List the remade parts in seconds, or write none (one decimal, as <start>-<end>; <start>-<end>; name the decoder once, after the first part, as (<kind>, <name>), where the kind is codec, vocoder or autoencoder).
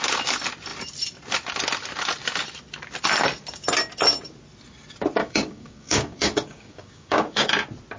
5.2-7.5 (codec, DAC)